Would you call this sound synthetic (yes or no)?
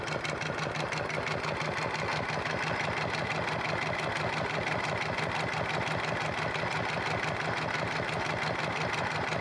no